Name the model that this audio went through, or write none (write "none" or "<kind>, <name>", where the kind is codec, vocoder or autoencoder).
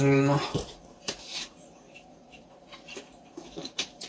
vocoder, BigVGAN v2